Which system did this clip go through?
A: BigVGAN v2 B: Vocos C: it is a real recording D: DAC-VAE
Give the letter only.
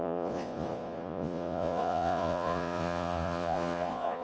B